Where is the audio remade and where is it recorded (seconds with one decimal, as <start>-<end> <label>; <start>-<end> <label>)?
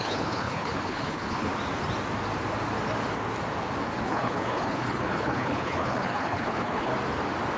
0.0-1.5 remade; 1.5-4.0 recorded; 4.0-6.9 remade; 6.9-7.6 recorded